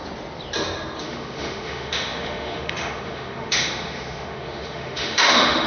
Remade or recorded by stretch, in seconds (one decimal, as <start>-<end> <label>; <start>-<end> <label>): 0.0-1.0 recorded; 1.0-5.7 remade